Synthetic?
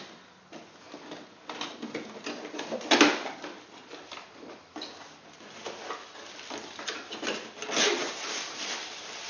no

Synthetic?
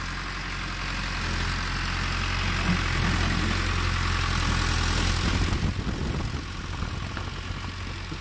no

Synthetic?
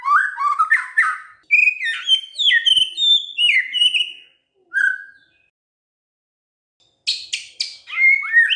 no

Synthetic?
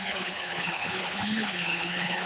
yes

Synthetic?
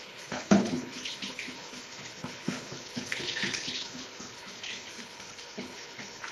yes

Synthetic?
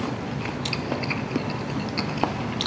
no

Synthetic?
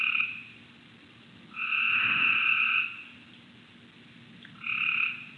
no